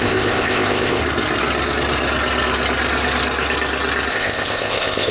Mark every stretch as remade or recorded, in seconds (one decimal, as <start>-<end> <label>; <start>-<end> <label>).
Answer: 0.0-1.0 remade; 1.0-4.1 recorded; 4.1-5.1 remade